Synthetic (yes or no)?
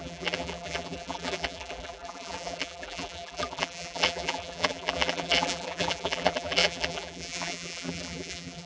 yes